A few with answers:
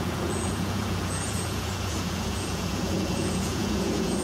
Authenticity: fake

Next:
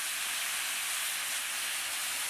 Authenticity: real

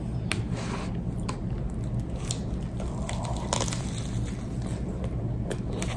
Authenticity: real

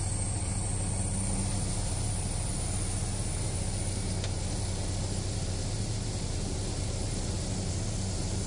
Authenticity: real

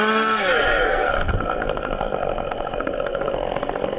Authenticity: fake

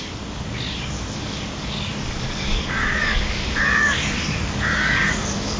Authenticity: fake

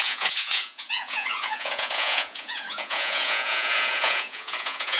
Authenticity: fake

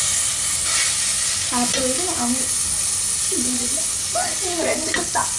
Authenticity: real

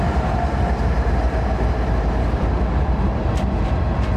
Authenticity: fake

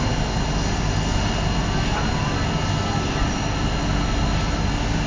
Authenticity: real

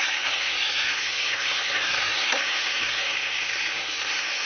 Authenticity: fake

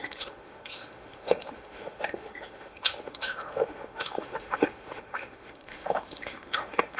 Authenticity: fake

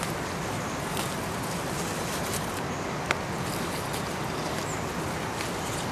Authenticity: real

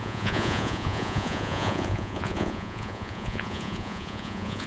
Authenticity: fake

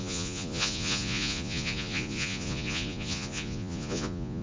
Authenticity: fake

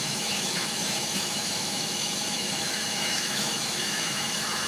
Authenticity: fake